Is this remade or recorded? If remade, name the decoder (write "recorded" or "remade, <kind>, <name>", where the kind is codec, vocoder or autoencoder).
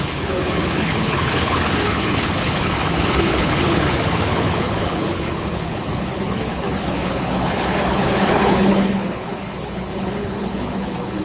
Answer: remade, codec, HILCodec